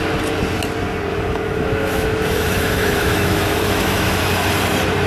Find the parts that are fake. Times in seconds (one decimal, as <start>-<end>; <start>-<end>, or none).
1.1-4.2